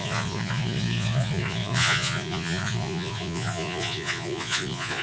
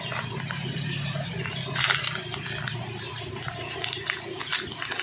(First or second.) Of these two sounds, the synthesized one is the first